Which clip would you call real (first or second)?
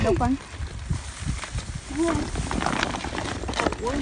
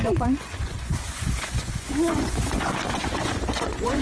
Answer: first